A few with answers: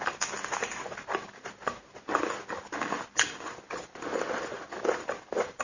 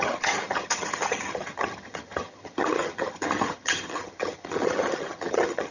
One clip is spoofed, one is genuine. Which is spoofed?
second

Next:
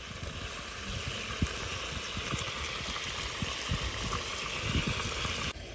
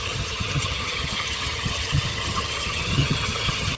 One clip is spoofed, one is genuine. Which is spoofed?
second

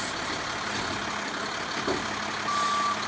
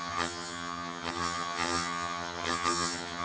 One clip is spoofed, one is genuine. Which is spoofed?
second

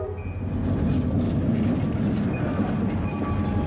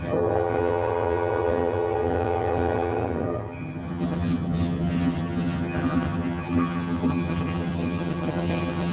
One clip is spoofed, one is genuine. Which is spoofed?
second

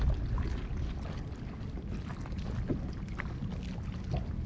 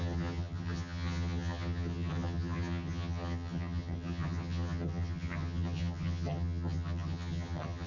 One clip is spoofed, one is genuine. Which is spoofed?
second